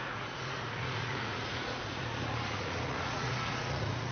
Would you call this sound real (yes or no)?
no